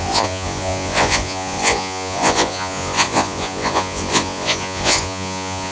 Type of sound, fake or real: fake